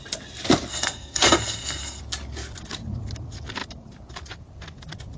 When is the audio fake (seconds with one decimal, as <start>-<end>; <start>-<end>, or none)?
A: 0.7-2.0